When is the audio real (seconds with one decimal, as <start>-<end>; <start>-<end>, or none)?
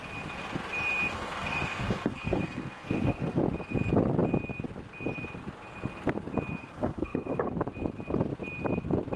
0.0-1.1; 3.4-6.6; 7.5-9.2